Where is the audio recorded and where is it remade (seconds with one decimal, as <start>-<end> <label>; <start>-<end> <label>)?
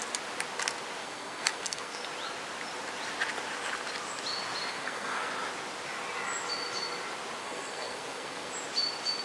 0.0-1.0 recorded; 1.0-2.0 remade; 2.0-4.7 recorded; 4.7-5.3 remade; 5.3-7.4 recorded; 7.4-8.5 remade; 8.5-9.2 recorded